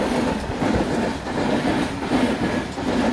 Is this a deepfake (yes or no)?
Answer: no